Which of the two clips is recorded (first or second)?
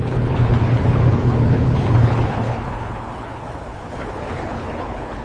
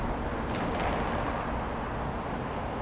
second